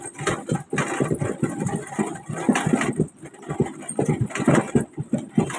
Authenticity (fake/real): real